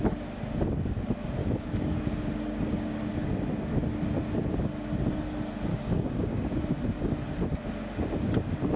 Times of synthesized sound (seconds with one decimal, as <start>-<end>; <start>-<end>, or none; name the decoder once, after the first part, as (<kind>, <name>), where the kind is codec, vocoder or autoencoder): 1.4-3.1 (codec, DAC); 5.7-6.6; 7.8-8.3